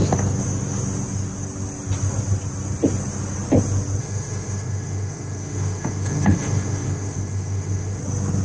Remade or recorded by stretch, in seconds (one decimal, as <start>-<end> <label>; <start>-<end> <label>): 0.0-4.0 recorded; 4.0-8.0 remade; 8.0-8.4 recorded